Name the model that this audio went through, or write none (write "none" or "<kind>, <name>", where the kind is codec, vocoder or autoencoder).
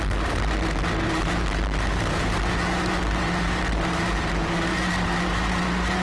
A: vocoder, BigVGAN v2